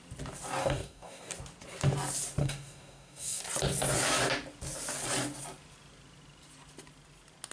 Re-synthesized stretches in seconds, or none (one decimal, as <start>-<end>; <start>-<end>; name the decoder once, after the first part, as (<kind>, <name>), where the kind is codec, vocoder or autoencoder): 0.6-1.3 (codec, DAC); 2.4-3.4